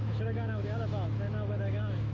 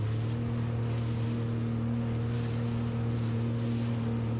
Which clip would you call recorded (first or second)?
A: second